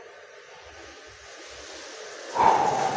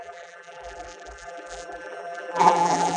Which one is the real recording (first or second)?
first